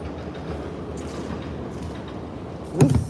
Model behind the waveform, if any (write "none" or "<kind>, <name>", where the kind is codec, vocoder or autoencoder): none